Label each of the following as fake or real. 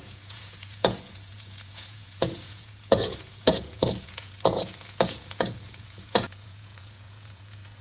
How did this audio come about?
fake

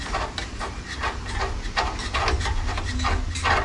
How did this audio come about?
real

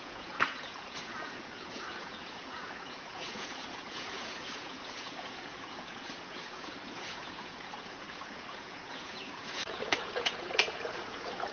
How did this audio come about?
fake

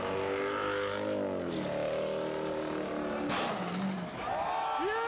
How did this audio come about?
real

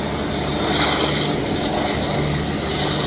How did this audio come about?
real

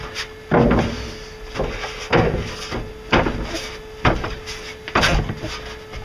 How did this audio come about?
real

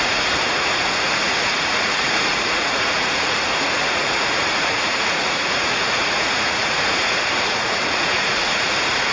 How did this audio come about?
fake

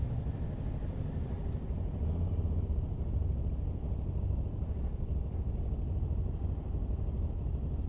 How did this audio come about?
real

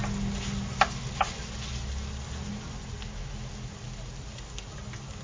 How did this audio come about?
real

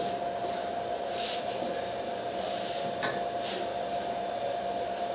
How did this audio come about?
real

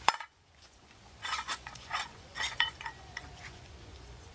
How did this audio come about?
fake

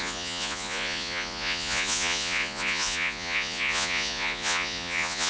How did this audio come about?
fake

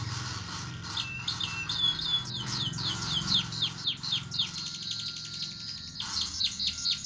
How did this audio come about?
real